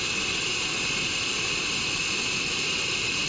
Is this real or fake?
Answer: real